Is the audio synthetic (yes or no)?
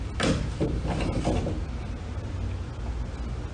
no